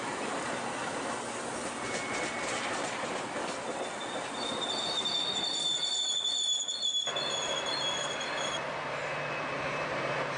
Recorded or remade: recorded